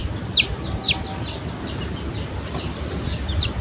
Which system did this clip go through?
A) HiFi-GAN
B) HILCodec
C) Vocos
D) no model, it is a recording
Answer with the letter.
D